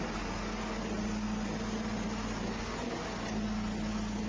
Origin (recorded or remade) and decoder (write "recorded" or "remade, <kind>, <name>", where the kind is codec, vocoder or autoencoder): recorded